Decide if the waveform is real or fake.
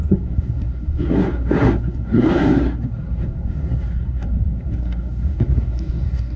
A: fake